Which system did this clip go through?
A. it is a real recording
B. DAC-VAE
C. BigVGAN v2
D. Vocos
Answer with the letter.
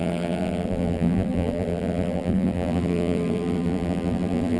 C